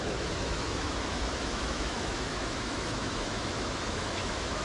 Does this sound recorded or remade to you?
remade